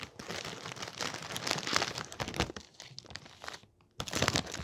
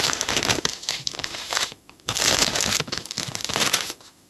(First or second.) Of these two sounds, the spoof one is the second